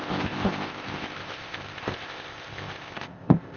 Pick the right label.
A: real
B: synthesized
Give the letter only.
B